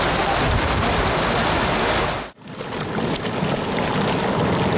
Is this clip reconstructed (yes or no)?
no